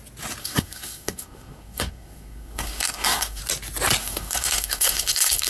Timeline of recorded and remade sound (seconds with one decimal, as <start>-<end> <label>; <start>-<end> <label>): 0.0-0.4 recorded; 0.4-3.4 remade; 3.4-4.0 recorded; 4.0-5.5 remade